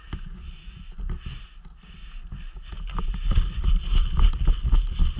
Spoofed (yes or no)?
no